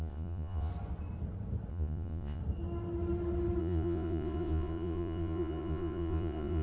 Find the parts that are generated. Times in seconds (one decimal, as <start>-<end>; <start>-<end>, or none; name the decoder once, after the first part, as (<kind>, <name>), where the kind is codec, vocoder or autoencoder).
0.0-0.7 (vocoder, Vocos); 1.7-2.4; 3.6-6.6